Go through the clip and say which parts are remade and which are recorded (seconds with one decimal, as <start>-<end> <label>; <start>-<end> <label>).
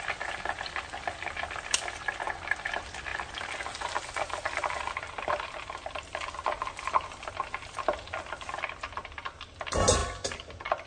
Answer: 0.0-10.9 recorded